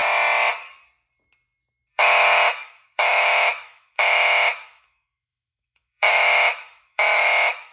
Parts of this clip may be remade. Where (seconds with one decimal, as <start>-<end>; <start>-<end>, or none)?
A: 1.9-7.7